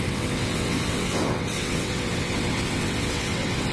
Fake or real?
fake